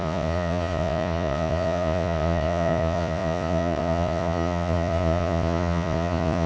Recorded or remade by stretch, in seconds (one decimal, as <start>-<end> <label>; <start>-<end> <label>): 0.0-6.5 remade